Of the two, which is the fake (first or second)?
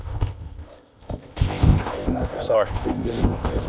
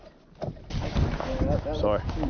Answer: first